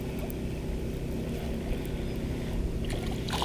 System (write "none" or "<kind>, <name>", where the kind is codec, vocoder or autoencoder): none